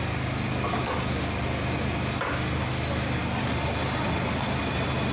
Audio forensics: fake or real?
real